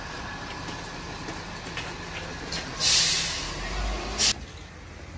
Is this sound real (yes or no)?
yes